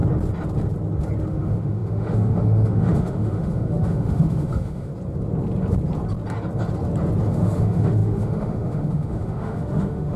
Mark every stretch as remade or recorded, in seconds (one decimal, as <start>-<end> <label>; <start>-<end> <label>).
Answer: 0.0-1.3 recorded; 1.3-4.9 remade; 4.9-7.3 recorded; 7.3-10.2 remade